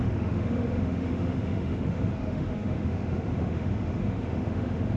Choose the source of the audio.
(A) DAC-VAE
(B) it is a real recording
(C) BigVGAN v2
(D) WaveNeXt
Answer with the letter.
A